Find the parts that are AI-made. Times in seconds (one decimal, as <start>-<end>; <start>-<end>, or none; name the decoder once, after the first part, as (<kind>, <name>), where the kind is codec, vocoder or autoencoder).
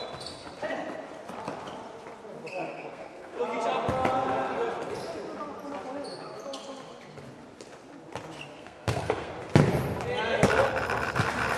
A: 2.5-3.4 (codec, SNAC); 8.5-9.3